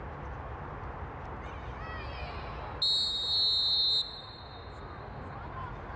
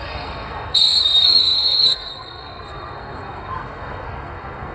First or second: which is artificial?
second